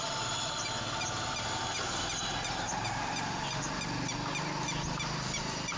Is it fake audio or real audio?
real